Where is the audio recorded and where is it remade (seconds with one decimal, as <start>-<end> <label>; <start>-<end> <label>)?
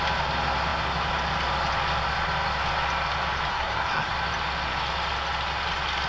0.0-3.5 recorded; 3.5-4.1 remade; 4.1-6.1 recorded